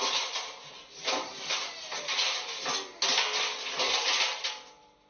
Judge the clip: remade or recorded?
recorded